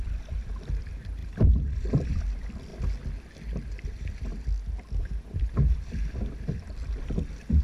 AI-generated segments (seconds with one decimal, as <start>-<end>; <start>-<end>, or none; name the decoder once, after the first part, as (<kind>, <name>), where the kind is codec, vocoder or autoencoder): 0.0-2.7 (vocoder, BigVGAN v2); 3.7-4.3; 5.0-7.6